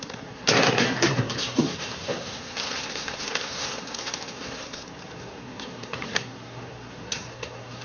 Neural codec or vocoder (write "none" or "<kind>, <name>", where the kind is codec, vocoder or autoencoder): codec, SNAC